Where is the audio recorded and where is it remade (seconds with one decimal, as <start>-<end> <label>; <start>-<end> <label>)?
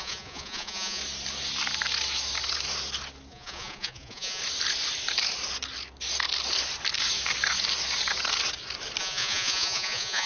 0.0-1.0 remade; 1.0-3.3 recorded; 3.3-4.4 remade; 4.4-9.0 recorded; 9.0-10.3 remade